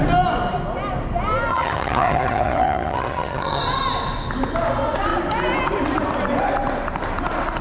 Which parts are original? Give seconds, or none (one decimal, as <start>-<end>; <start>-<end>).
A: 0.0-1.5; 3.6-7.6